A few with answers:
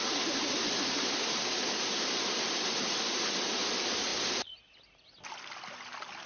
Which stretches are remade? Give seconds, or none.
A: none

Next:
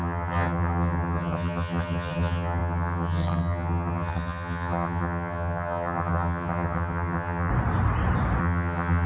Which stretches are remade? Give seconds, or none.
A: 0.0-7.5 (vocoder, HiFi-GAN); 8.4-9.1

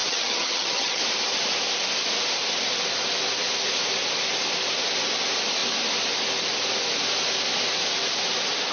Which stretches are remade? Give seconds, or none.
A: 0.0-1.0 (vocoder, HiFi-GAN)

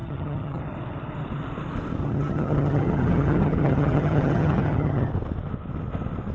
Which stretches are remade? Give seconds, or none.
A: 0.0-0.6 (vocoder, HiFi-GAN); 2.0-5.1